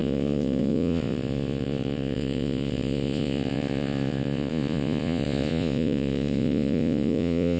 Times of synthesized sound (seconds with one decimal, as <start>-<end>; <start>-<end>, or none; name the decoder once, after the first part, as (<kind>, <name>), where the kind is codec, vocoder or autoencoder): 0.0-7.6 (vocoder, Vocos)